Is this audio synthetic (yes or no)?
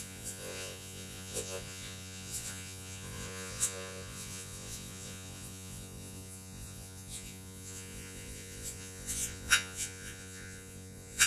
yes